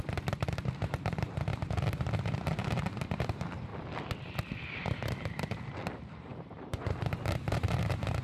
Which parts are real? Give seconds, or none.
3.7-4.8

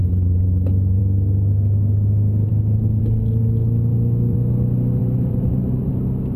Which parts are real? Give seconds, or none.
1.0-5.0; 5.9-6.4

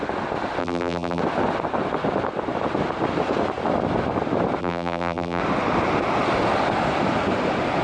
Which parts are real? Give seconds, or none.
0.0-0.6; 1.2-4.6; 5.4-7.8

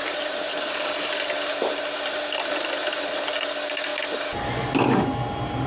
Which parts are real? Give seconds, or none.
2.7-5.7

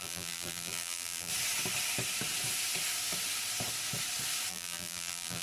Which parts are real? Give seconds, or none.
1.3-4.5